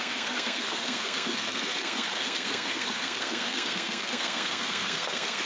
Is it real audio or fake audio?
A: fake